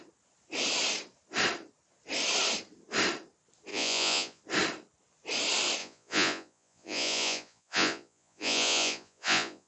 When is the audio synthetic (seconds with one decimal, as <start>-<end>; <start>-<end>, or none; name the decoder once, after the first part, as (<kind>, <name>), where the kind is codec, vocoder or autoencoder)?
3.7-4.4 (vocoder, Vocos); 5.8-9.7